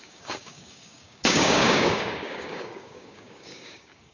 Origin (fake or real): fake